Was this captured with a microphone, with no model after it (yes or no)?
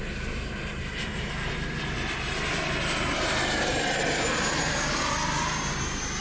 yes